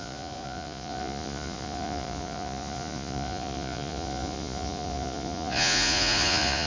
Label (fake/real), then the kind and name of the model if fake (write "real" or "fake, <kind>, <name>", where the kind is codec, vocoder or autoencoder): fake, vocoder, Vocos